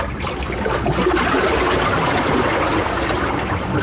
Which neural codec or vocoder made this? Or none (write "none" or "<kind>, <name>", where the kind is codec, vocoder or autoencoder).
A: none